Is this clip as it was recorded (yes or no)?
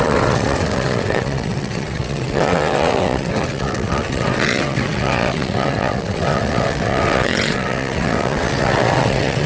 no